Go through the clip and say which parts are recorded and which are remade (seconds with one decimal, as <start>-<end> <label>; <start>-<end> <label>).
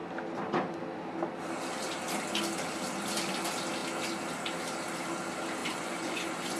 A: 0.0-5.6 recorded; 5.6-6.6 remade